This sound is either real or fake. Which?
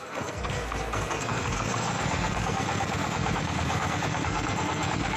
fake